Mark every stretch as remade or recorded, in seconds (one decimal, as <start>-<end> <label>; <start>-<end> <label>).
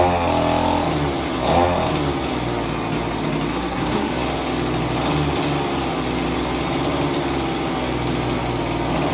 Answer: 0.0-3.5 recorded; 3.5-4.1 remade; 4.1-9.1 recorded